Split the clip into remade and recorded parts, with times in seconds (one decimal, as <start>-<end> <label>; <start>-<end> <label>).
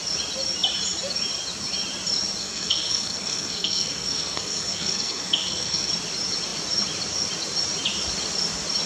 0.0-2.4 recorded; 2.4-5.9 remade; 5.9-8.9 recorded